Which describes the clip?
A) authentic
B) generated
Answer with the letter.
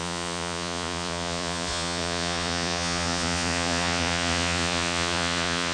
B